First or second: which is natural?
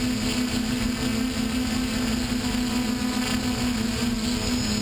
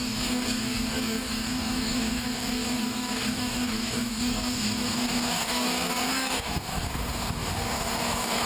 first